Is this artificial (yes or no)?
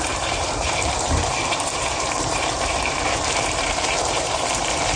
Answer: yes